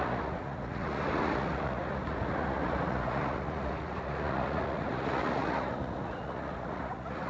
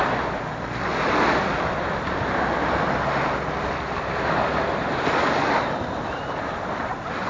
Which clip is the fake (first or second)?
first